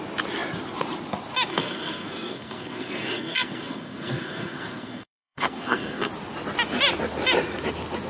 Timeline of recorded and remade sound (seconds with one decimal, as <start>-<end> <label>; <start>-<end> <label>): 0.0-1.5 recorded; 1.5-6.1 remade; 6.1-8.1 recorded